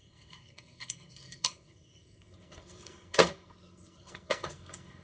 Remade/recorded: remade